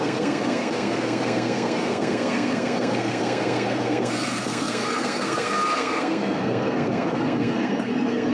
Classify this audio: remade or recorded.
remade